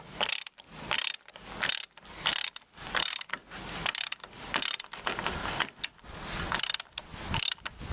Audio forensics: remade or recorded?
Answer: recorded